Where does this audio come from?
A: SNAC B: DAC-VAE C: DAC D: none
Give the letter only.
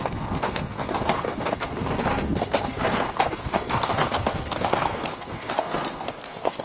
A